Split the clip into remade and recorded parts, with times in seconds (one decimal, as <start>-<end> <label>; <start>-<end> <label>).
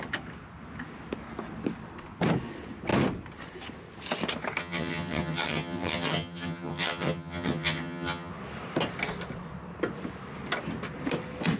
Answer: 0.0-4.6 recorded; 4.6-8.3 remade; 8.3-11.6 recorded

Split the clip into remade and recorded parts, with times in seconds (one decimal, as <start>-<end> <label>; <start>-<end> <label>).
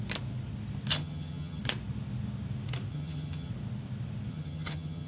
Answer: 0.0-0.9 recorded; 0.9-1.6 remade; 1.6-2.9 recorded; 2.9-3.5 remade; 3.5-4.3 recorded; 4.3-5.1 remade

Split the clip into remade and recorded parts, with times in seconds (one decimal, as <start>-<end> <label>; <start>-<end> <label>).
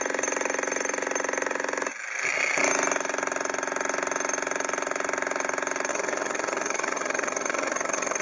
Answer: 0.0-5.9 recorded; 5.9-8.2 remade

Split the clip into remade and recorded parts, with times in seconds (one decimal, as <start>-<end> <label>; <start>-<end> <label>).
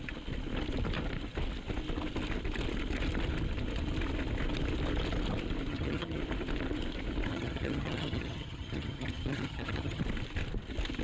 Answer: 0.0-5.7 recorded; 5.7-6.2 remade; 6.2-7.3 recorded; 7.3-10.0 remade; 10.0-11.0 recorded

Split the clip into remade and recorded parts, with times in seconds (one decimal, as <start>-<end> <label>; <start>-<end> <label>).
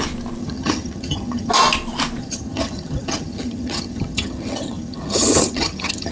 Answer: 0.0-0.4 recorded; 0.4-1.5 remade; 1.5-2.2 recorded; 2.2-6.1 remade